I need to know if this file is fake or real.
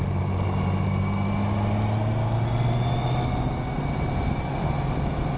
real